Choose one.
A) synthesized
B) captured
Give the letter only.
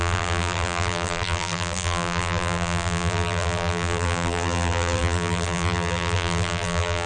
A